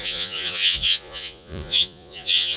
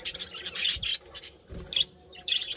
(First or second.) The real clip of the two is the second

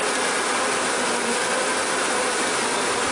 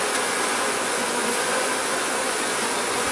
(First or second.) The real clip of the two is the first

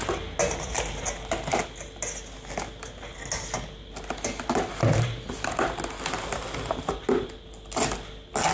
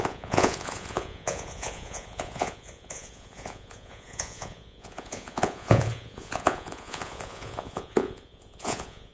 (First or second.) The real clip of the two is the first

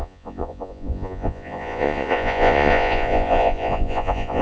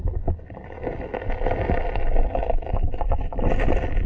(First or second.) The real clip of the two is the second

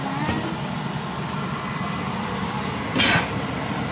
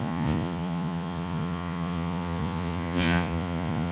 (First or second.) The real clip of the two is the first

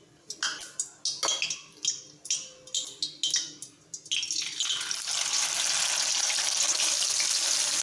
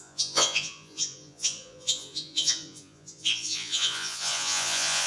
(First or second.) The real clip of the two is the first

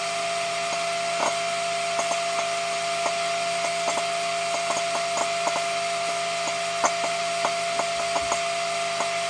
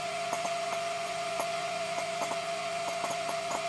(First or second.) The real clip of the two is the first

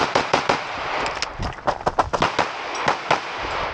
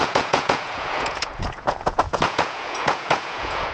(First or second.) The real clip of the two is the first